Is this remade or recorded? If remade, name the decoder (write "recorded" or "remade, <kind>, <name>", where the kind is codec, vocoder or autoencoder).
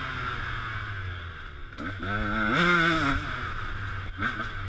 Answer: recorded